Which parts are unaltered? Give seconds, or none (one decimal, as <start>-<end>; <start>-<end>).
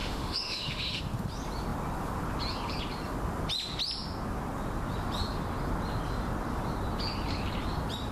1.0-8.1